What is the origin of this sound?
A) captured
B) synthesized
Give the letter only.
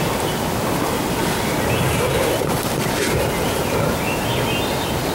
A